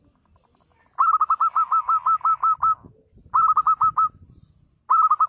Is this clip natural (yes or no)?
yes